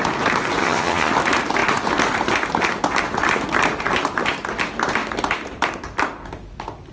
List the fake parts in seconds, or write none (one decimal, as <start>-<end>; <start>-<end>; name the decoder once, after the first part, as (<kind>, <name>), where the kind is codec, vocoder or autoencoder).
0.6-1.1 (vocoder, HiFi-GAN)